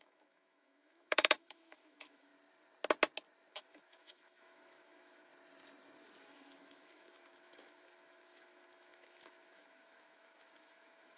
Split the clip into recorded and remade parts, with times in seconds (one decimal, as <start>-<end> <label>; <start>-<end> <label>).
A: 0.0-2.3 remade; 2.3-3.5 recorded; 3.5-5.3 remade; 5.3-6.2 recorded; 6.2-11.2 remade